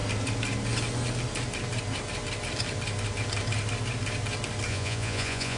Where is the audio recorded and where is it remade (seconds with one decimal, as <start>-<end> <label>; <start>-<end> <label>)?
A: 0.0-4.7 recorded; 4.7-5.6 remade